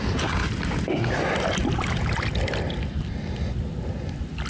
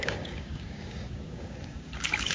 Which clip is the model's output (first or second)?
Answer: second